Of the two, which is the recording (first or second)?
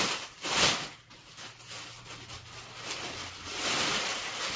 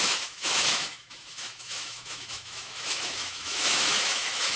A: first